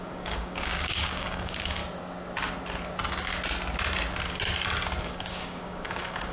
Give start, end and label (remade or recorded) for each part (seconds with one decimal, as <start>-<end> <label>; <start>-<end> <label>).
0.0-1.8 remade; 1.8-5.0 recorded; 5.0-6.3 remade